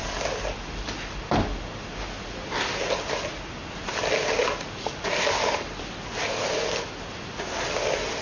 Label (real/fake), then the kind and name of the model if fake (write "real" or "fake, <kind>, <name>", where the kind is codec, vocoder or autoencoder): real